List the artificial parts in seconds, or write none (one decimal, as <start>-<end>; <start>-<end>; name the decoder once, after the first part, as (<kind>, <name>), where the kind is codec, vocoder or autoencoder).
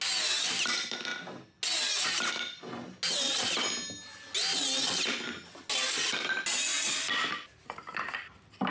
none